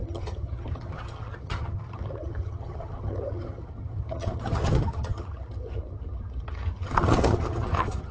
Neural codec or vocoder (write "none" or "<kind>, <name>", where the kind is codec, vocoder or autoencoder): vocoder, HiFi-GAN